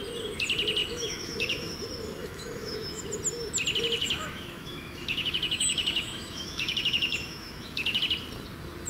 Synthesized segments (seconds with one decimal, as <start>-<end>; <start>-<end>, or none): 0.8-1.7; 2.2-3.0; 4.0-8.0